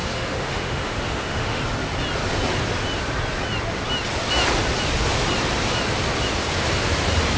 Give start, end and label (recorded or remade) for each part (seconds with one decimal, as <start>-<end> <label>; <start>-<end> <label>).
0.0-1.6 remade; 1.6-7.4 recorded